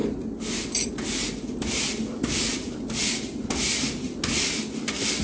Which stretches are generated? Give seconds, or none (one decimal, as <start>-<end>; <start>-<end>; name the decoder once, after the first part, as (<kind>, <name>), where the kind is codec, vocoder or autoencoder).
none